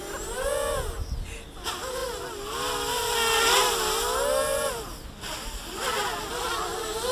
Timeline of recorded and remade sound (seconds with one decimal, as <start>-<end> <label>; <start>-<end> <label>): 0.0-7.1 recorded